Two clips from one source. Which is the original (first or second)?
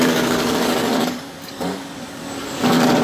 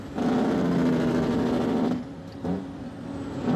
second